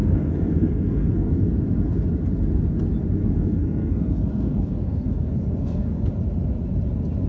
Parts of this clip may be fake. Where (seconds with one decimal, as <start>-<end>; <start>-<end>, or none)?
0.0-1.5; 3.2-6.1